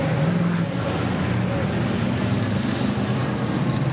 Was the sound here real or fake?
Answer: real